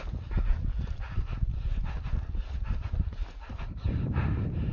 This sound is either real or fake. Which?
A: real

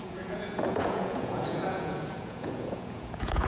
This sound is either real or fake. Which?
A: fake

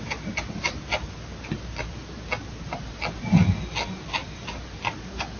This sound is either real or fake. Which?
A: real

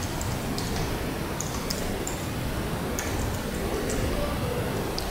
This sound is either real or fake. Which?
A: real